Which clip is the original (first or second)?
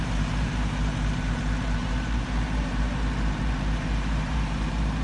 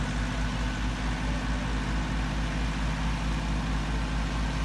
second